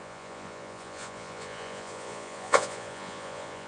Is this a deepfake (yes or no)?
yes